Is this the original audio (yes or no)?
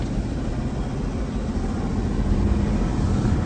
yes